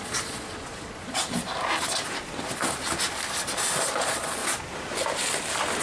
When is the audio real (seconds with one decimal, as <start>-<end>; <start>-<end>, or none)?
1.2-3.9; 4.4-5.8